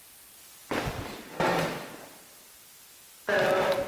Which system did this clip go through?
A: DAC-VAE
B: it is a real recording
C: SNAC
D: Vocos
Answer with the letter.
B